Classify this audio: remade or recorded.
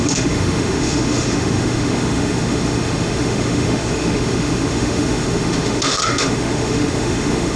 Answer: remade